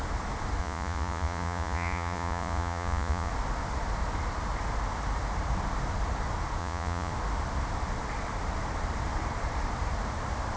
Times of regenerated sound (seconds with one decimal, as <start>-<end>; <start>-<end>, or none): 0.6-3.3; 6.6-7.1